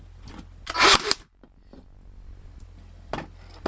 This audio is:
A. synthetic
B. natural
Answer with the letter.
B